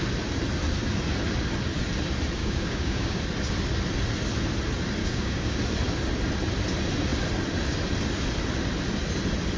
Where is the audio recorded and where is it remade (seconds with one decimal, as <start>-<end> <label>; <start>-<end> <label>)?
0.0-2.4 recorded; 2.4-3.2 remade; 3.2-5.0 recorded; 5.0-5.6 remade; 5.6-9.6 recorded